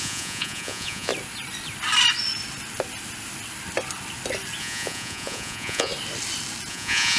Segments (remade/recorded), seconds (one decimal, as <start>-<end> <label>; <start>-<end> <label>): 0.0-1.1 remade; 1.1-4.6 recorded; 4.6-5.9 remade; 5.9-6.7 recorded; 6.7-7.2 remade